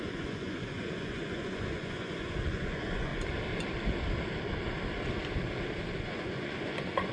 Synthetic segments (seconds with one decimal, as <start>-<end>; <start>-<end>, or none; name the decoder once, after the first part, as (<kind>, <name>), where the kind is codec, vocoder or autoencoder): 0.0-3.1 (vocoder, Vocos); 6.0-7.1